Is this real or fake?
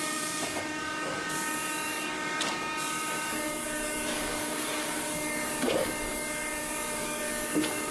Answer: fake